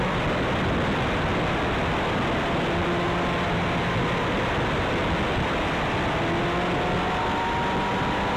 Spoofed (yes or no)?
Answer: no